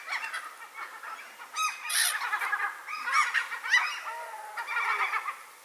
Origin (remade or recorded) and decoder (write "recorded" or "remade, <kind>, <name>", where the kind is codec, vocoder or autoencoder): recorded